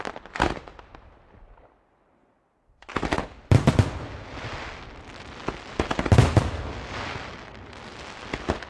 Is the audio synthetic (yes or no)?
no